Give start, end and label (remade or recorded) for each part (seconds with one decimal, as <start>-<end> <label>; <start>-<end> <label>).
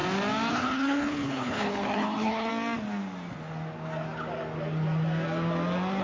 0.0-0.5 recorded; 0.5-2.5 remade; 2.5-6.0 recorded